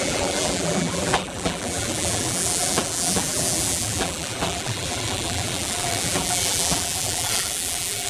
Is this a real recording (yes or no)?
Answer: no